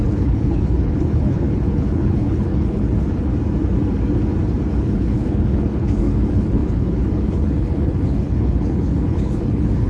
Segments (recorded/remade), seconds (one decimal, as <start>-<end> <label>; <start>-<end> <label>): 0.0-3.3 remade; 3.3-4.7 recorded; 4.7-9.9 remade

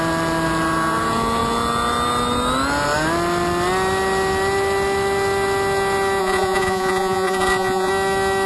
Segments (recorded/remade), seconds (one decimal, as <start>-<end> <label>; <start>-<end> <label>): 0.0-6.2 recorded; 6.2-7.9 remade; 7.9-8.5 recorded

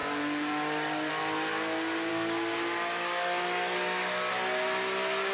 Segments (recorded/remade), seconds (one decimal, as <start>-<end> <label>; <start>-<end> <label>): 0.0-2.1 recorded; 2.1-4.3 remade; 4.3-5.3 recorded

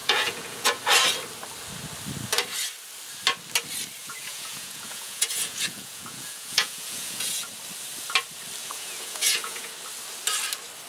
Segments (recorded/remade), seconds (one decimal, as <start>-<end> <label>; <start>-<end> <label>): 0.0-0.8 remade; 0.8-4.0 recorded; 4.0-7.5 remade; 7.5-8.6 recorded; 8.6-9.7 remade; 9.7-10.9 recorded

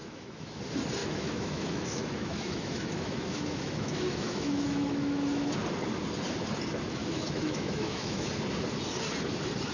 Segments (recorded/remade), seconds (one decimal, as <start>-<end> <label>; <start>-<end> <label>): 0.0-0.6 remade; 0.6-1.0 recorded; 1.0-5.5 remade; 5.5-7.0 recorded; 7.0-8.3 remade; 8.3-9.7 recorded